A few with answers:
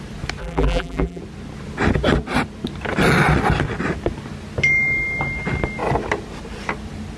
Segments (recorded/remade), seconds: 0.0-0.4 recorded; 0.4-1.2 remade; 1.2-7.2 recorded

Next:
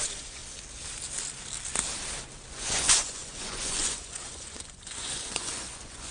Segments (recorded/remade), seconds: 0.0-0.4 remade; 0.4-2.5 recorded; 2.5-6.1 remade